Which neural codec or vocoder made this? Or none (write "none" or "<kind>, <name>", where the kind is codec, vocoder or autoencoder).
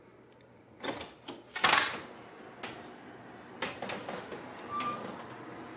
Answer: none